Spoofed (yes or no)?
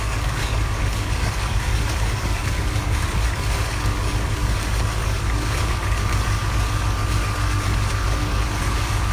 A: yes